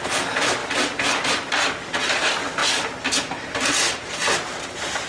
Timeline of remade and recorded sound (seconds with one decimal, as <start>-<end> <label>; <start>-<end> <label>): 0.0-5.1 recorded